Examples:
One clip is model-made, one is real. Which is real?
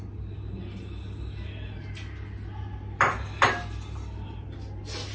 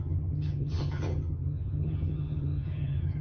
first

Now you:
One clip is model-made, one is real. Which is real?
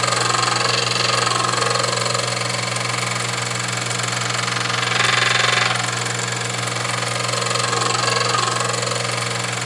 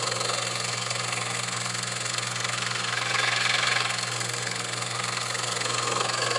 first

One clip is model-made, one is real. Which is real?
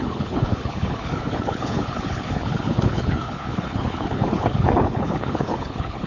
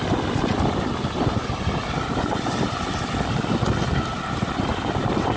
second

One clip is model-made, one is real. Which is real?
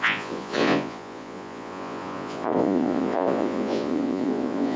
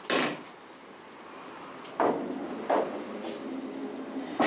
second